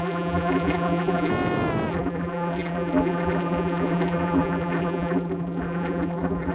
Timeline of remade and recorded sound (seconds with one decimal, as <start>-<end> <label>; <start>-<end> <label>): 0.0-1.3 remade; 1.3-1.9 recorded; 1.9-6.5 remade